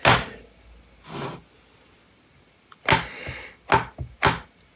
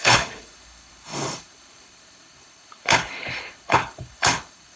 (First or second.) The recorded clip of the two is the first